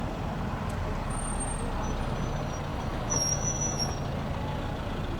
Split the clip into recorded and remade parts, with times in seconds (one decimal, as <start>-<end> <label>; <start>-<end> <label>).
0.0-2.7 recorded; 2.7-3.9 remade; 3.9-5.2 recorded